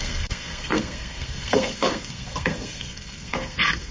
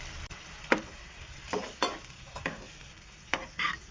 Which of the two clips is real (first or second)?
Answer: second